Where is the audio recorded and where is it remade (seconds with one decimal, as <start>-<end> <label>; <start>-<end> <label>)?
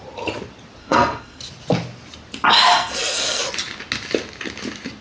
0.0-0.8 recorded; 0.8-1.4 remade; 1.4-2.7 recorded; 2.7-3.4 remade; 3.4-5.0 recorded